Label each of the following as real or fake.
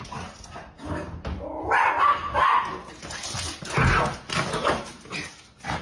real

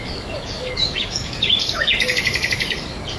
fake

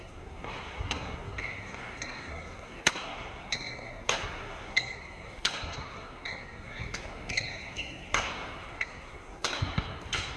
fake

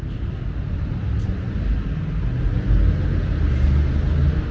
real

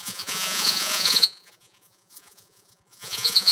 fake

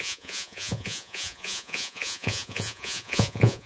fake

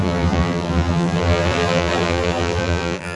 fake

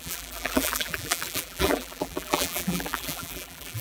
fake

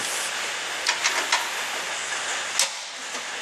real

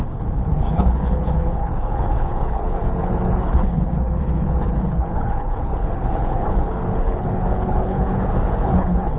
fake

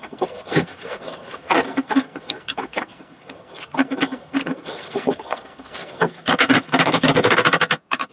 fake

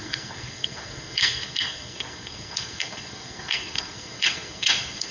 fake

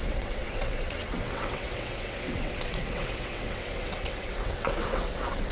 fake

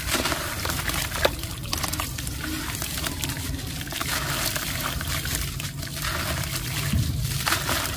fake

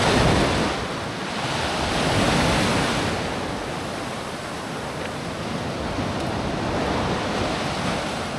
real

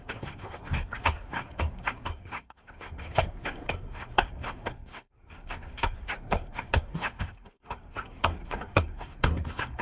fake